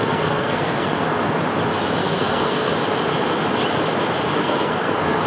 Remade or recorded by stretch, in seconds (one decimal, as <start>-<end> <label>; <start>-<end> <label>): 0.0-1.1 remade; 1.1-2.0 recorded; 2.0-2.7 remade; 2.7-4.4 recorded; 4.4-5.3 remade

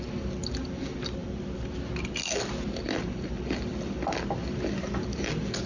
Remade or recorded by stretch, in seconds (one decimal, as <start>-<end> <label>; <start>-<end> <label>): 0.0-5.7 recorded

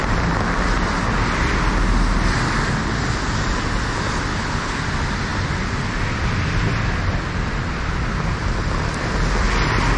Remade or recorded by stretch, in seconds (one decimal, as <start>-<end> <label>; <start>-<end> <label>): 0.0-4.3 recorded; 4.3-4.8 remade; 4.8-10.0 recorded

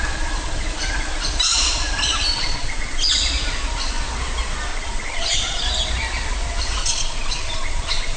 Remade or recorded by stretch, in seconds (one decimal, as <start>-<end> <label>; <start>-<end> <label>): 0.0-2.3 recorded; 2.3-3.1 remade; 3.1-4.7 recorded; 4.7-5.6 remade; 5.6-6.8 recorded; 6.8-8.2 remade

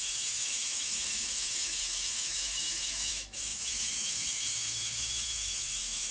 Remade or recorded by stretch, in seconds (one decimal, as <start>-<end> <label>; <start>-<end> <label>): 0.0-6.1 remade

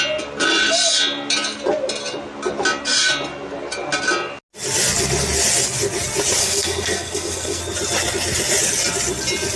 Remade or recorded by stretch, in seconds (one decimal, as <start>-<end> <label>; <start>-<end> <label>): 0.0-6.4 recorded; 6.4-7.6 remade; 7.6-9.6 recorded

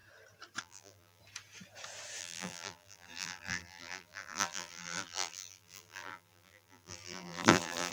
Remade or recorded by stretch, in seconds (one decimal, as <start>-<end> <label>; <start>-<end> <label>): 0.0-0.6 recorded; 0.6-1.2 remade; 1.2-2.2 recorded; 2.2-7.9 remade

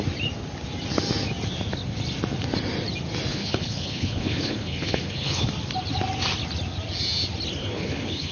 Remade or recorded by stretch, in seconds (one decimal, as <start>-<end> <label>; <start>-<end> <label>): 0.0-3.3 recorded; 3.3-5.5 remade; 5.5-7.6 recorded; 7.6-8.3 remade